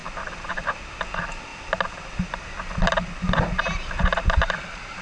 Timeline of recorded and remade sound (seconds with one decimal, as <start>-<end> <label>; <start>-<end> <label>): 0.0-5.0 recorded